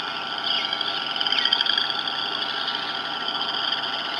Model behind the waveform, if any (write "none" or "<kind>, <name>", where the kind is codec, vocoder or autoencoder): none